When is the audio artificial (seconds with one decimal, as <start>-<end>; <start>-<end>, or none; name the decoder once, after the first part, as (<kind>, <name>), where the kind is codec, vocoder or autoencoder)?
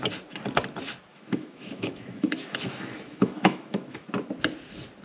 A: 1.1-4.1 (autoencoder, DAC-VAE)